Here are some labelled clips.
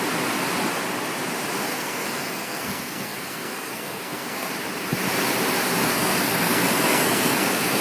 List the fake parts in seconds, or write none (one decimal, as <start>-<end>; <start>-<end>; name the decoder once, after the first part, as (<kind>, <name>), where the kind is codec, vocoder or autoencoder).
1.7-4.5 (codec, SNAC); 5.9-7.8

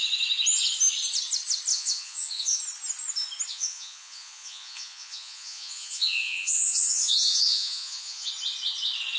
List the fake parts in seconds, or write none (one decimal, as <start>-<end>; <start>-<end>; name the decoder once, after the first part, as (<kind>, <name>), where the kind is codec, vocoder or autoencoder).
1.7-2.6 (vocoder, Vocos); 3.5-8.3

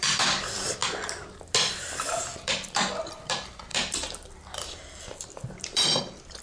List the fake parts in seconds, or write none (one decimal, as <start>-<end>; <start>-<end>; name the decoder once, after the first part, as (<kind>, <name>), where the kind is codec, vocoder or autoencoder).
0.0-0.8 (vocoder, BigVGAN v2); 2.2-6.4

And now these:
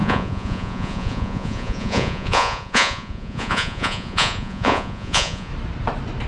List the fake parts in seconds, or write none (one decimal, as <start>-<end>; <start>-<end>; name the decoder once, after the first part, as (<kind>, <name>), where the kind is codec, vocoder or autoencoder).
0.0-5.5 (vocoder, Vocos)

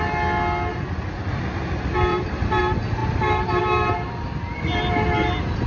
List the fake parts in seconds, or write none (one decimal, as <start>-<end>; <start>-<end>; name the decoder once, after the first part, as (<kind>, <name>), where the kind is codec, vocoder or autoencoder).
2.1-2.6 (vocoder, BigVGAN v2); 3.0-3.6

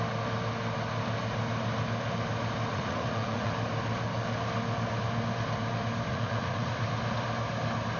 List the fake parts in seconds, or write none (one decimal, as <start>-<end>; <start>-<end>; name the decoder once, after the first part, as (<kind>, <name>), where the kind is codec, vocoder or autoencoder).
2.7-3.5 (vocoder, Vocos); 6.1-6.9

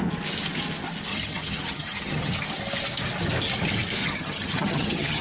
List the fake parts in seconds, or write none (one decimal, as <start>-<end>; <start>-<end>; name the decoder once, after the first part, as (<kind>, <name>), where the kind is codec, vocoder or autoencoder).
1.1-2.3 (vocoder, HiFi-GAN); 4.0-5.2

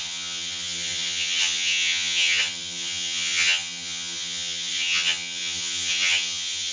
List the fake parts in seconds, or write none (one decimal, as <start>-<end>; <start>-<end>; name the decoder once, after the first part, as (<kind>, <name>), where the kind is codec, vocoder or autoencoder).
0.0-6.7 (vocoder, HiFi-GAN)